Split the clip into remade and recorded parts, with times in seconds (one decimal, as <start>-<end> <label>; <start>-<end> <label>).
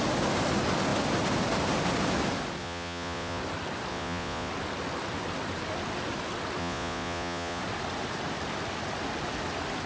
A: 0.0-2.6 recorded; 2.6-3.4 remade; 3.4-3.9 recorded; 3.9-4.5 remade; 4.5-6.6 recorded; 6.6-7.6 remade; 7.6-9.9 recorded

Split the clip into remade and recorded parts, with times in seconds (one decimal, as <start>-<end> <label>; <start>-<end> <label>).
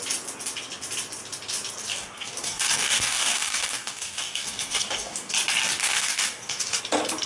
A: 0.0-1.9 recorded; 1.9-5.3 remade; 5.3-5.8 recorded; 5.8-6.8 remade; 6.8-7.3 recorded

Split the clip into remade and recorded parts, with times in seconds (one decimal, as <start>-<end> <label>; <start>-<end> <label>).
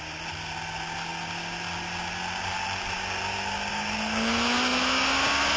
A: 0.0-5.6 recorded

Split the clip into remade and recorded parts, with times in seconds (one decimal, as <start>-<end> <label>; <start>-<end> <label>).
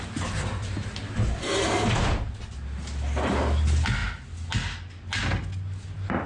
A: 0.0-6.3 recorded